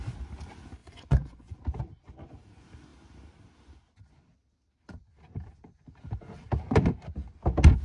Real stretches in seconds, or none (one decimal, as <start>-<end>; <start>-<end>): 0.0-0.8; 1.6-7.8